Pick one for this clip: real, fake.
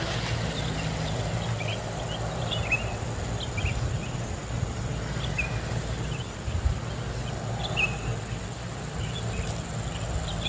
real